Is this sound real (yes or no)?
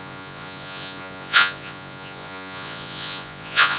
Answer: no